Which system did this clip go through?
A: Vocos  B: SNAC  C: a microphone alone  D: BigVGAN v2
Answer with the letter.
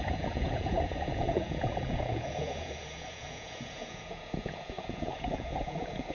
A